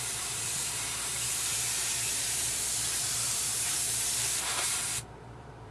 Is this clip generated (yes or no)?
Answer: yes